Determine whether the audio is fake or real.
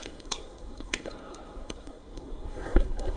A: fake